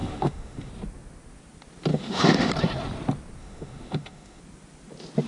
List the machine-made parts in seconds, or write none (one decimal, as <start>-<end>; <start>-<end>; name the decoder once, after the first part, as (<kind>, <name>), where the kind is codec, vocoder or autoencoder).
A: 0.0-0.7 (autoencoder, DAC-VAE); 1.9-2.5; 3.4-4.4

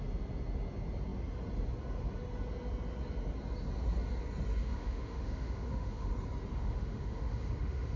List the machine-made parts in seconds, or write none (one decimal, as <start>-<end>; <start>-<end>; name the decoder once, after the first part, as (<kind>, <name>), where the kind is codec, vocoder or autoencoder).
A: 4.6-6.1 (autoencoder, DAC-VAE); 6.5-8.0

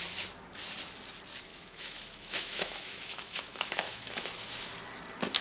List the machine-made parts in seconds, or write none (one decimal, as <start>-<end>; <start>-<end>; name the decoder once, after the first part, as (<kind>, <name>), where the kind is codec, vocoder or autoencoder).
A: 1.5-4.7 (autoencoder, DAC-VAE)

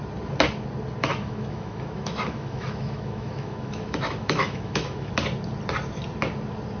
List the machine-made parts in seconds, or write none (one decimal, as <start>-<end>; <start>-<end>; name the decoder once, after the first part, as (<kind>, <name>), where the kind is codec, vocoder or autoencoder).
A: 1.0-5.1 (autoencoder, DAC-VAE)

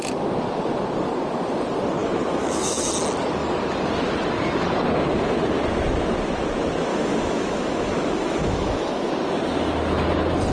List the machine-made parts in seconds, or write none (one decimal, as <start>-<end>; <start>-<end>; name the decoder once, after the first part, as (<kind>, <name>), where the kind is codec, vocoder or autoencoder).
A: 2.0-2.9 (autoencoder, DAC-VAE); 6.9-9.1